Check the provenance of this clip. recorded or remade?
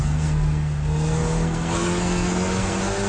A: remade